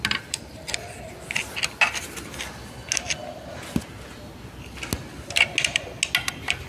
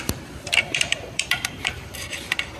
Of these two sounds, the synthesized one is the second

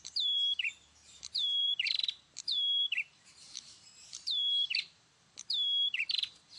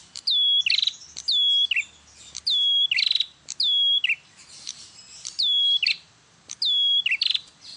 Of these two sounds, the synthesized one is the first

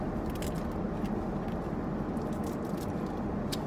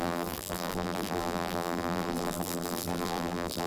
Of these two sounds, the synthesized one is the second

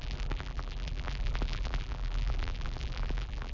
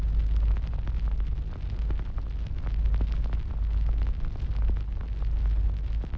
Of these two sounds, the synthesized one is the first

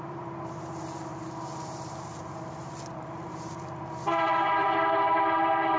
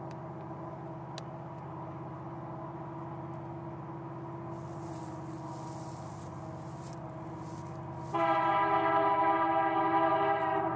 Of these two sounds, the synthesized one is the first